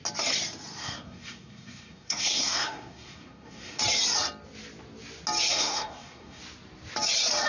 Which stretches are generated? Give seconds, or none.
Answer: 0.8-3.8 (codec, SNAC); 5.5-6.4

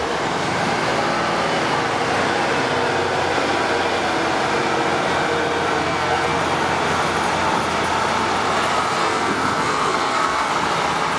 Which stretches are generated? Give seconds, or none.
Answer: 5.8-6.4 (codec, SNAC); 9.0-10.5

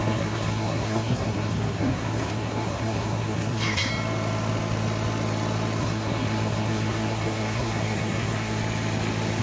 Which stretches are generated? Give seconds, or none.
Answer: 0.0-3.9 (codec, SNAC); 5.8-8.6

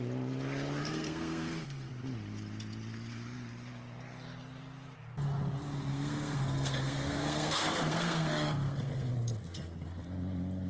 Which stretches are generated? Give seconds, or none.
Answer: 0.8-1.9 (codec, SNAC); 5.9-9.1

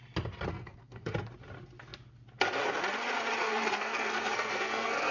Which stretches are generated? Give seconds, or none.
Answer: 0.5-1.1 (codec, SNAC); 3.4-5.1

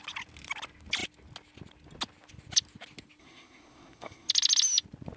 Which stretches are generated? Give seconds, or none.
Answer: 3.2-4.3 (codec, SNAC)

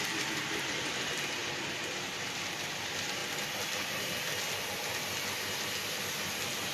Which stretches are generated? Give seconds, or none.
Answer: none

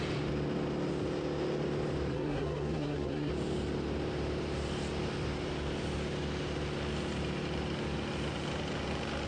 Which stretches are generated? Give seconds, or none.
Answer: 2.1-3.3 (codec, SNAC)